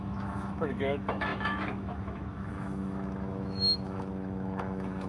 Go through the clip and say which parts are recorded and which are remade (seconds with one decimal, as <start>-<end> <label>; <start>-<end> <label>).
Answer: 0.0-5.1 remade